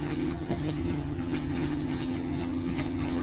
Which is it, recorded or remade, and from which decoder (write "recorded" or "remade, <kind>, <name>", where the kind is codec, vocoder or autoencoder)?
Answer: remade, vocoder, HiFi-GAN